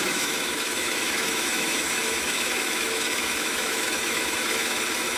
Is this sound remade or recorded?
remade